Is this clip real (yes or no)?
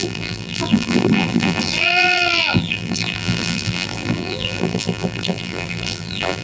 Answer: no